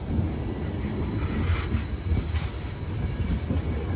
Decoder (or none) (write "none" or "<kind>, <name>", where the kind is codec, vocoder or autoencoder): none